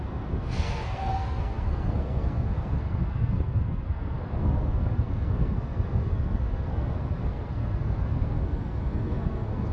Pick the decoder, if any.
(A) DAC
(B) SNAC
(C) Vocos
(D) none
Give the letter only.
B